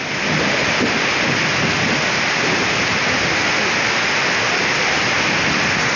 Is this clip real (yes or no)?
yes